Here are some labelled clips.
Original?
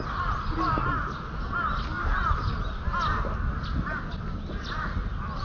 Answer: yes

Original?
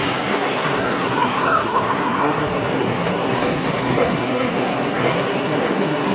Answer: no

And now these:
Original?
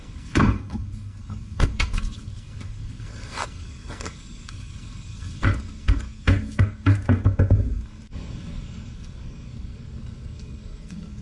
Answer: no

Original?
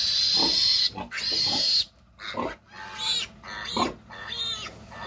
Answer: yes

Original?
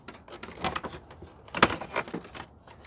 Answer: yes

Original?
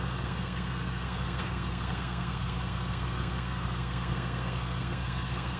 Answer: no